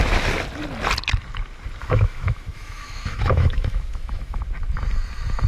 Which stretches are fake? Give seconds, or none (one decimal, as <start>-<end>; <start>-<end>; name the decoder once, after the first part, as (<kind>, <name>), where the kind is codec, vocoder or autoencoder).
1.8-4.4 (autoencoder, DAC-VAE)